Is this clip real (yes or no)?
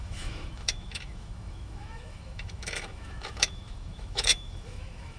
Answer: no